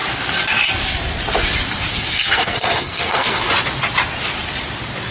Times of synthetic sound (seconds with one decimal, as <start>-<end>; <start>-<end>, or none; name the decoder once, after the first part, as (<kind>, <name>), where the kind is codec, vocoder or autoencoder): 1.9-3.5 (codec, SNAC)